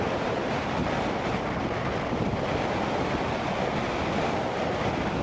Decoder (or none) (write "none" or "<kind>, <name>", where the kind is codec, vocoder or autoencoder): none